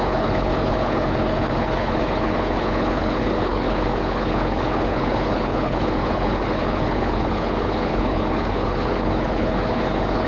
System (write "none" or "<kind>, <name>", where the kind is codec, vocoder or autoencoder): codec, HILCodec